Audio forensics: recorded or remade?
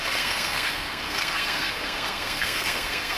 remade